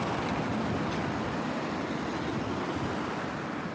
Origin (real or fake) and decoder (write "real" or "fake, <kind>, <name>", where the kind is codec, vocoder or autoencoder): real